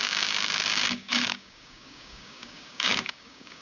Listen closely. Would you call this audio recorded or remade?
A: remade